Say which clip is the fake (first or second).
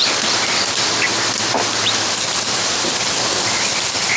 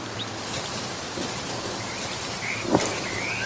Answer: second